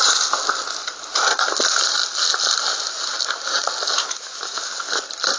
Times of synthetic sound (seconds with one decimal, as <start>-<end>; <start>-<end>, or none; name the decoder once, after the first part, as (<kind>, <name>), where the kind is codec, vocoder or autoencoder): 4.0-4.6 (autoencoder, DAC-VAE)